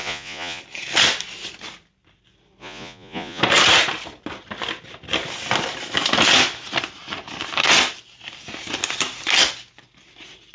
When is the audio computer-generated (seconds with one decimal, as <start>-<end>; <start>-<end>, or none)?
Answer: 0.0-0.6; 2.6-3.4